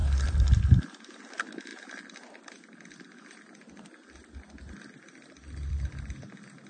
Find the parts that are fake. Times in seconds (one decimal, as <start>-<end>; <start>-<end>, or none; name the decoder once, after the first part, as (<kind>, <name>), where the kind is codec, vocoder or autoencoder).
none